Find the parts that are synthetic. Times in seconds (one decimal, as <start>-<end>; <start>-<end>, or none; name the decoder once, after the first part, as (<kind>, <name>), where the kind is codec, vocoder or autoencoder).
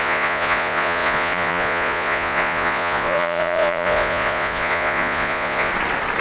0.0-5.7 (vocoder, Vocos)